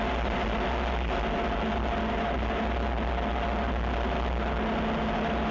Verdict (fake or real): real